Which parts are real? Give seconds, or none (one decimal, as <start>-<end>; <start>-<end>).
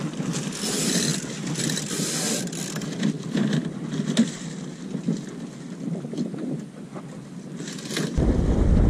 none